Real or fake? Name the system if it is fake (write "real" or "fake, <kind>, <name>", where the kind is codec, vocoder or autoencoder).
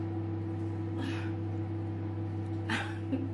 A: real